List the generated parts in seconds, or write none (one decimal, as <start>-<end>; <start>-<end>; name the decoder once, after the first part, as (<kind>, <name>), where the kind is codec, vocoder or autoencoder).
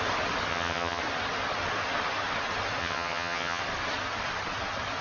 0.5-1.0 (vocoder, HiFi-GAN); 2.8-3.6